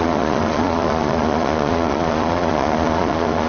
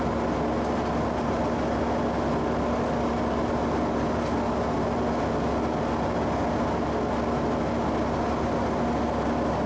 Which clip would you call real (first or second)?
second